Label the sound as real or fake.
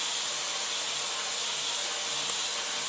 real